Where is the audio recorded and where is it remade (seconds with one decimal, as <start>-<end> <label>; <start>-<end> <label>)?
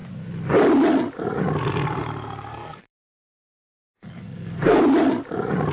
0.0-2.5 recorded; 2.5-4.8 remade; 4.8-5.7 recorded